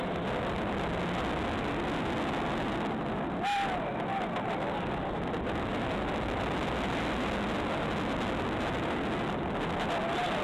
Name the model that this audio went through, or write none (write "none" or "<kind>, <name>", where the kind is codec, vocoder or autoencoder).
none